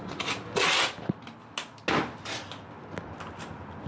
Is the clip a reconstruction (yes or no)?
no